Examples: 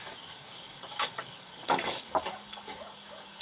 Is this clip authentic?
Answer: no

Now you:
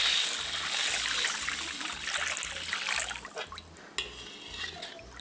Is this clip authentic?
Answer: yes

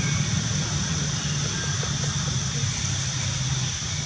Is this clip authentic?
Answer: yes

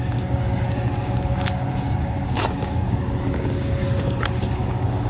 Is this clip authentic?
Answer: no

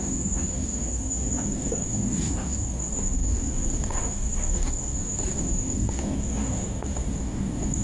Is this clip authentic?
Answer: no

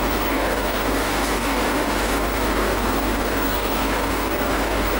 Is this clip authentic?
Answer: no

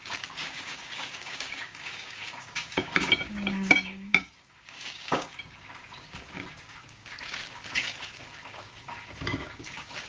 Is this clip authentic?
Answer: no